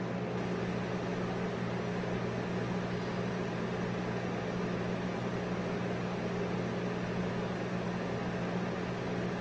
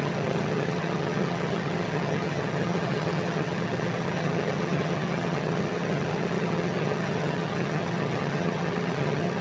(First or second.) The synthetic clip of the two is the second